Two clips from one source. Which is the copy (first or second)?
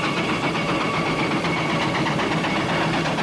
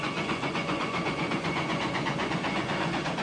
second